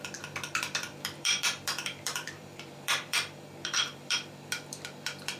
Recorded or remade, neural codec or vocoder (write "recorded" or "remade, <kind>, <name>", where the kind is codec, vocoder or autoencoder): remade, vocoder, BigVGAN v2